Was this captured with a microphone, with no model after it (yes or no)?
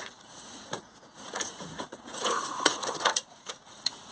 no